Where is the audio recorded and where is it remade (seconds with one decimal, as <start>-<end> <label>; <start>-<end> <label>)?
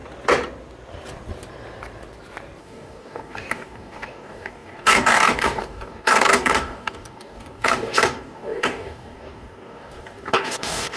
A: 0.0-2.6 recorded; 2.6-11.0 remade